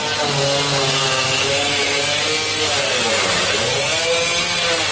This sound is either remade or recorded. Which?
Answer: recorded